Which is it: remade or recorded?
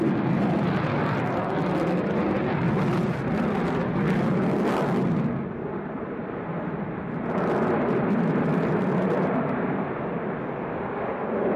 recorded